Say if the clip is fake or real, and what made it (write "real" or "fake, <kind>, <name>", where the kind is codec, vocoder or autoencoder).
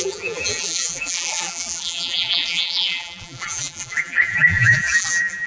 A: fake, vocoder, BigVGAN v2